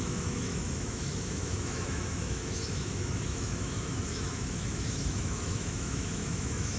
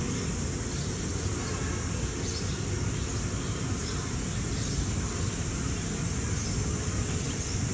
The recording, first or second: second